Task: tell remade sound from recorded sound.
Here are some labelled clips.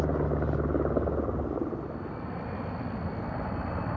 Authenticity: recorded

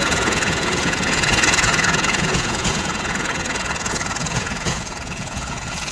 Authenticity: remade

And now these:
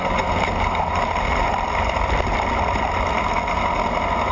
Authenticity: recorded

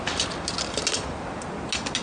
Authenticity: recorded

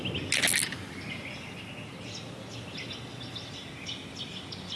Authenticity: recorded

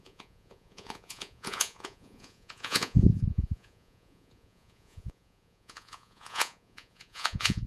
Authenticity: remade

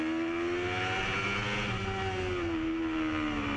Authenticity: recorded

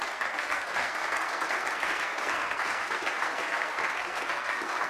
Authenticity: remade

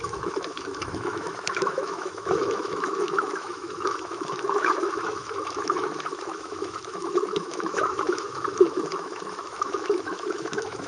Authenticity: remade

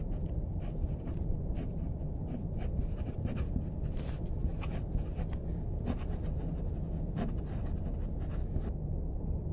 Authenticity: recorded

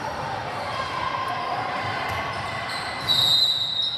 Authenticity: remade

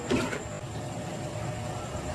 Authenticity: recorded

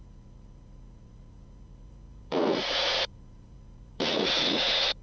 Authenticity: remade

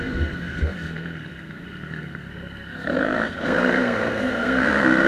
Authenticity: remade